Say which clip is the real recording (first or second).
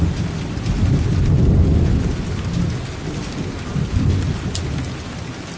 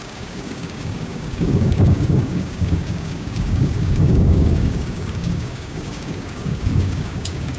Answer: first